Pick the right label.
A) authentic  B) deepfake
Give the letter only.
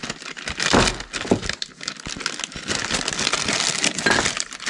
A